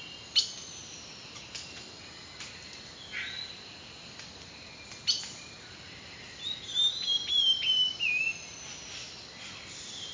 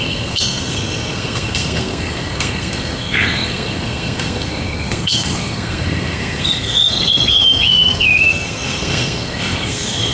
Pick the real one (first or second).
first